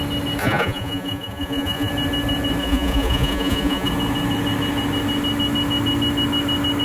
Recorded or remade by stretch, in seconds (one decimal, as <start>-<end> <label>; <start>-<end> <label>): 0.0-0.4 recorded; 0.4-1.9 remade; 1.9-2.6 recorded; 2.6-3.9 remade; 3.9-6.8 recorded